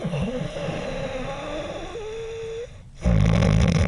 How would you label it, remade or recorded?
recorded